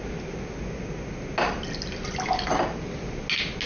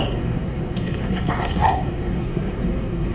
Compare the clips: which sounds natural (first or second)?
first